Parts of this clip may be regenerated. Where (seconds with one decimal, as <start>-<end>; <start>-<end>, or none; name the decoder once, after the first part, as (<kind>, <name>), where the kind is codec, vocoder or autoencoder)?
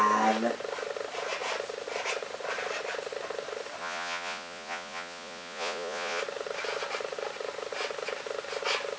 3.8-6.2 (vocoder, Vocos)